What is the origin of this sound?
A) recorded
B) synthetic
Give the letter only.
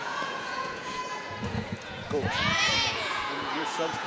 B